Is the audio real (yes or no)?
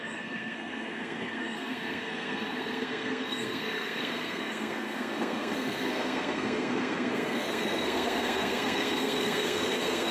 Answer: no